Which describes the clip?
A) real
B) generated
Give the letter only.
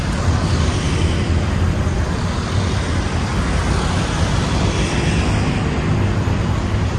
A